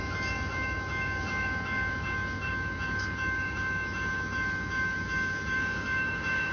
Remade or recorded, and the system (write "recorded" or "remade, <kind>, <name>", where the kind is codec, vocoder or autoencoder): remade, autoencoder, DAC-VAE